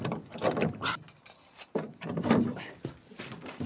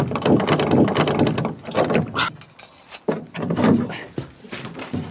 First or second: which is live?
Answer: second